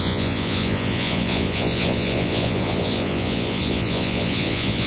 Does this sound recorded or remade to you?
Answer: remade